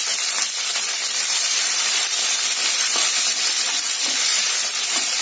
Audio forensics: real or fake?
fake